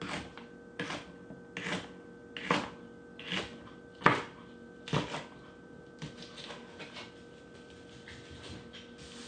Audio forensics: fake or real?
real